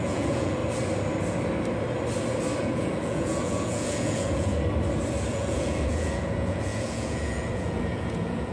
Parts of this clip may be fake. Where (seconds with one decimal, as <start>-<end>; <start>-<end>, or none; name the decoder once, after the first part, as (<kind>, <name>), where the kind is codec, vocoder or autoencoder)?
0.0-0.6 (vocoder, Vocos); 2.6-4.5; 5.3-8.5